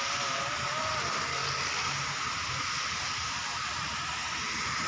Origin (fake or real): real